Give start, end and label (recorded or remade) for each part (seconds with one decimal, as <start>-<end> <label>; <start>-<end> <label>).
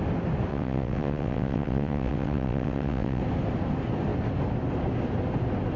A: 0.0-0.5 recorded; 0.5-3.2 remade; 3.2-5.8 recorded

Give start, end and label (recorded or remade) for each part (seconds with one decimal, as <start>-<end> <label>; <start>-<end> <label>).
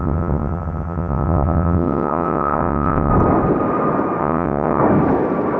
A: 0.0-3.1 remade; 3.1-4.2 recorded; 4.2-4.8 remade; 4.8-5.6 recorded